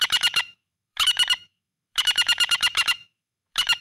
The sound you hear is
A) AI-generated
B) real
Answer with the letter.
A